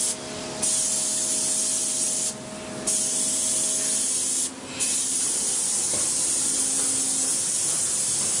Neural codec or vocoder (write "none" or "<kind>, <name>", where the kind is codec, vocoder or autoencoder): none